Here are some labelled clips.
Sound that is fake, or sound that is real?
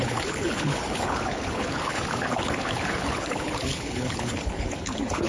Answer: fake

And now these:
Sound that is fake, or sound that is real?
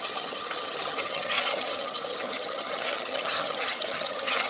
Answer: fake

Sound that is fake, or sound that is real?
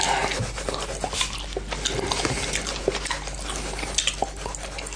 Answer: real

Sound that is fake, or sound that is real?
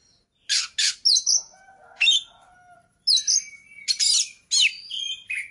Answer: real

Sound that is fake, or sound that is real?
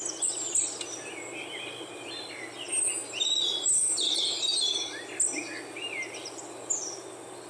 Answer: real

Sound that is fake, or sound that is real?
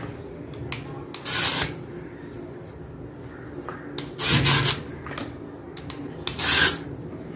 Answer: real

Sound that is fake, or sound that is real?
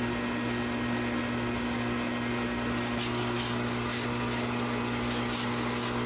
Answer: real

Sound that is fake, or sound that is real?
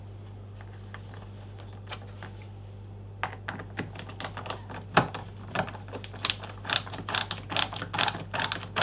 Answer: real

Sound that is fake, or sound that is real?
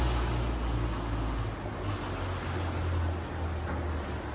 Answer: real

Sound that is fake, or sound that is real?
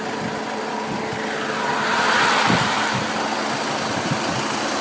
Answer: real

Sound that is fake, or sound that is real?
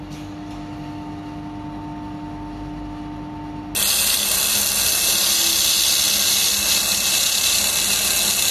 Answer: real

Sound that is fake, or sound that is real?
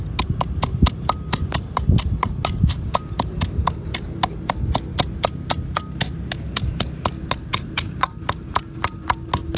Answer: real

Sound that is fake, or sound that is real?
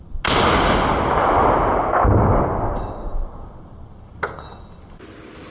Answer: real